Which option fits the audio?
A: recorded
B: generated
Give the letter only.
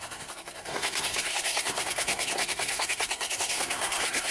B